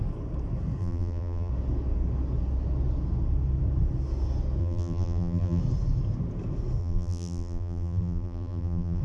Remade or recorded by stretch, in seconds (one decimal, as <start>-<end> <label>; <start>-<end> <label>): 0.0-0.8 recorded; 0.8-1.5 remade; 1.5-4.6 recorded; 4.6-5.6 remade; 5.6-6.8 recorded; 6.8-9.0 remade